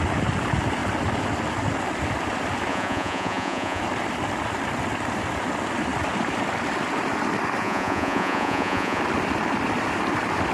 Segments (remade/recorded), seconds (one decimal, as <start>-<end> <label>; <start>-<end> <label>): 0.0-2.7 recorded; 2.7-3.8 remade; 3.8-7.6 recorded; 7.6-9.0 remade; 9.0-10.5 recorded